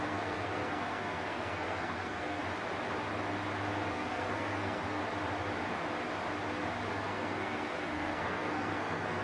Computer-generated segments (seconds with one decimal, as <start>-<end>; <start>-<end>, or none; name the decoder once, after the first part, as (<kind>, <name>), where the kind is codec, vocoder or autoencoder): 0.0-2.4 (codec, SNAC); 3.9-5.0; 6.9-9.2